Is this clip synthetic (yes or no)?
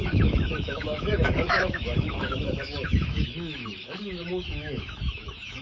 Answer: yes